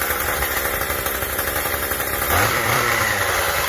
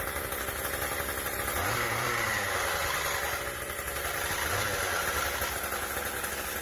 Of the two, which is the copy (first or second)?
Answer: first